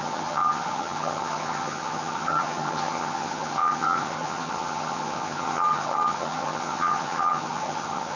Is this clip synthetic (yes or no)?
yes